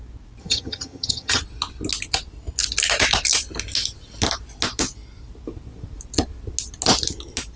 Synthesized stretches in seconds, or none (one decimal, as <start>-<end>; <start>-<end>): 0.4-1.4